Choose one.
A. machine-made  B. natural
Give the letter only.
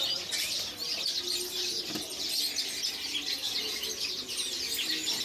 B